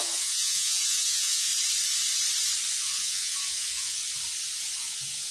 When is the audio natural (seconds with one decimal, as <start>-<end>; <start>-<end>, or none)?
1.5-2.8; 4.0-4.8